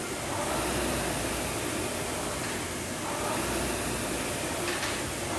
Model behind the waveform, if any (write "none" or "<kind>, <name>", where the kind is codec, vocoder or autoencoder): none